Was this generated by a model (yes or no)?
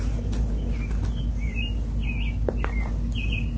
no